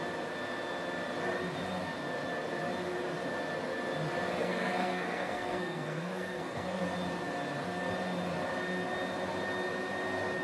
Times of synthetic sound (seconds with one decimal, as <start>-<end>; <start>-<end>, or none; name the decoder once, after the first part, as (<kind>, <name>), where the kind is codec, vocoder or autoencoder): 4.4-6.8 (codec, SNAC)